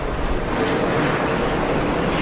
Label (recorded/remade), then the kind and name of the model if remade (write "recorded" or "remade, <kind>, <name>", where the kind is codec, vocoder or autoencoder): recorded